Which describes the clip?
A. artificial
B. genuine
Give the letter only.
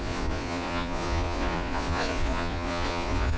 A